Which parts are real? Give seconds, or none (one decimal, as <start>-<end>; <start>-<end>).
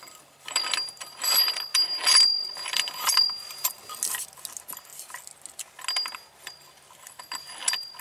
0.0-8.0